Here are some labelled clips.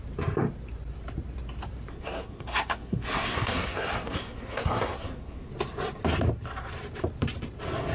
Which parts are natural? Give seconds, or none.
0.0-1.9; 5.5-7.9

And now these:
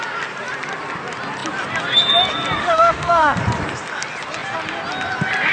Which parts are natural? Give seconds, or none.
0.0-2.6; 3.4-5.5

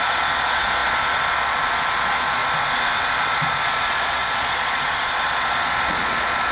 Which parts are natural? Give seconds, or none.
2.4-3.2

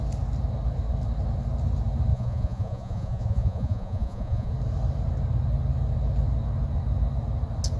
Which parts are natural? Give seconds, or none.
0.0-2.1; 4.5-7.8

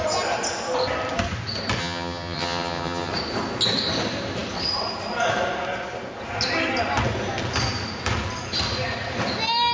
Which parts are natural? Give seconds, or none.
0.0-1.8; 3.1-9.7

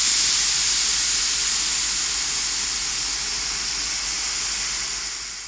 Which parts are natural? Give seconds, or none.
0.0-5.5

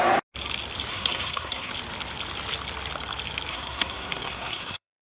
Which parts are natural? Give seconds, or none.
0.0-0.9; 1.7-3.5

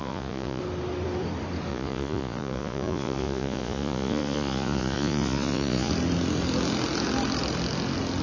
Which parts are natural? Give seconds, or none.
0.6-1.7; 5.9-8.2